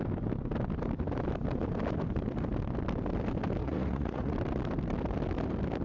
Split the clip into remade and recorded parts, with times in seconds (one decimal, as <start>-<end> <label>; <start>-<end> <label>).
0.0-3.6 recorded; 3.6-4.3 remade; 4.3-5.8 recorded